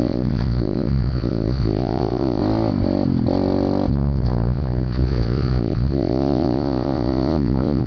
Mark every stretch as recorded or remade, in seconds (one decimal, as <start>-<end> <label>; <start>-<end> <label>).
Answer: 0.0-2.4 remade; 2.4-3.9 recorded; 3.9-7.9 remade